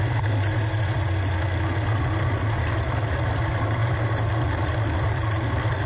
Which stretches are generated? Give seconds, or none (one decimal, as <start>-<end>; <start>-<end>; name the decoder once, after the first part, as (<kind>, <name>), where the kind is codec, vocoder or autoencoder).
none